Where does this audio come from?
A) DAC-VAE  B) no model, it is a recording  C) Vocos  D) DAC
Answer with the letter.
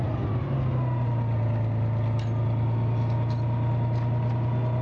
B